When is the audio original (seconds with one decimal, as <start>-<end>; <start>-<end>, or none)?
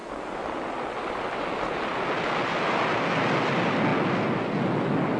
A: 0.0-5.2